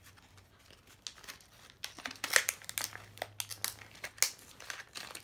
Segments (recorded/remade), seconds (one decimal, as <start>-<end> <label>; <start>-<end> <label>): 0.0-5.2 recorded